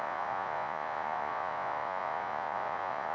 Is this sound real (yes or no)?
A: no